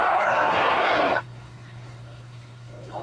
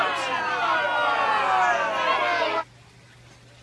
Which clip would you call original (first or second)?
second